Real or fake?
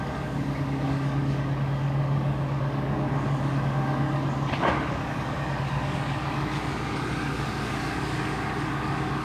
fake